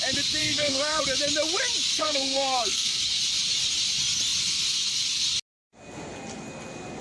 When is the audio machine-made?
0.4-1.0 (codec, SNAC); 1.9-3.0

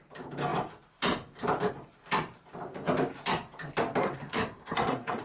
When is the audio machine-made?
4.0-5.2 (codec, SNAC)

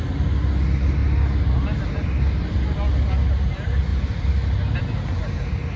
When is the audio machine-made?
none

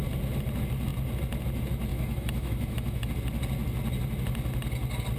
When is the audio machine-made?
1.9-3.1 (autoencoder, DAC-VAE)

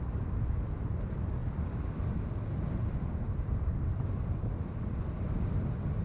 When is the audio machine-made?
1.4-5.0 (vocoder, BigVGAN v2)

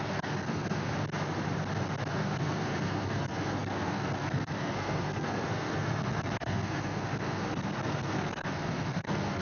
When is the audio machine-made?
0.0-0.9 (codec, SNAC); 2.1-9.4